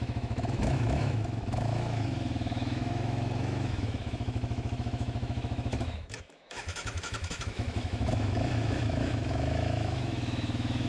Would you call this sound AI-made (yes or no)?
yes